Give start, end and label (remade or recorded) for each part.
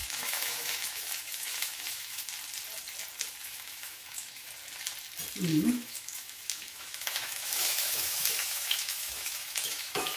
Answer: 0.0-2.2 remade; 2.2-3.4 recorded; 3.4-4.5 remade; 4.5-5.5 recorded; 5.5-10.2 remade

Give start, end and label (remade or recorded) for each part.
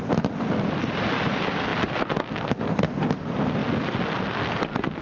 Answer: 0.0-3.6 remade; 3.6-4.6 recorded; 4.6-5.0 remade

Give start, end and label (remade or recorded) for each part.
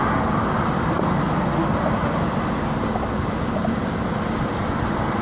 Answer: 0.0-5.2 recorded